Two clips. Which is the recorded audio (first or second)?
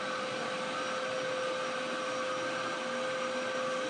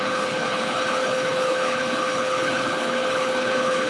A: first